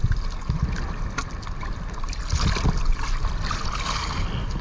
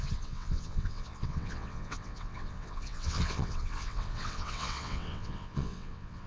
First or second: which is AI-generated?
second